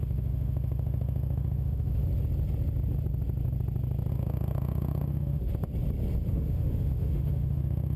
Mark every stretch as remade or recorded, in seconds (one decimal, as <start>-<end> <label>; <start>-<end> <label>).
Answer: 0.0-2.0 remade; 2.0-4.1 recorded; 4.1-5.5 remade; 5.5-6.3 recorded; 6.3-8.0 remade